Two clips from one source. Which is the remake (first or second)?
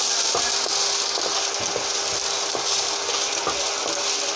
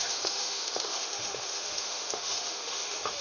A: second